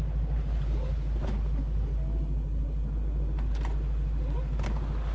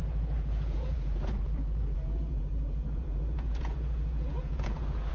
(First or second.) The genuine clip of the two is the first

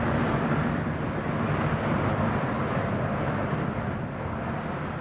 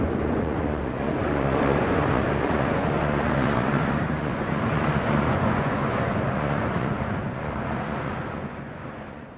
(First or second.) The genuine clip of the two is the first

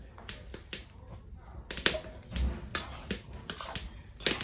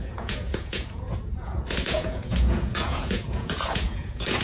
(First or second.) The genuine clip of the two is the first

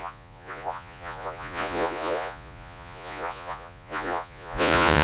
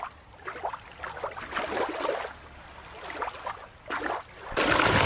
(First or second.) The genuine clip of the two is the second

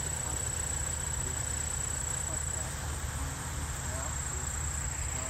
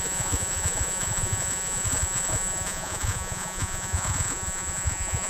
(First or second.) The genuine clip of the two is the first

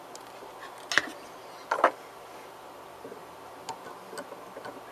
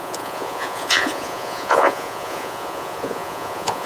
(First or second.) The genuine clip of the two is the first